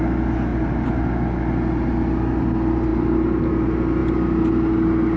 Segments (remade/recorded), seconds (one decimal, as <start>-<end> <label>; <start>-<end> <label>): 0.0-0.5 recorded; 0.5-1.1 remade; 1.1-5.2 recorded